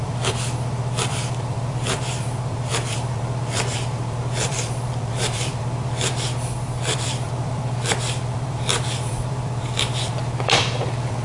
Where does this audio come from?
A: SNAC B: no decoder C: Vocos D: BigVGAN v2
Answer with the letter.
D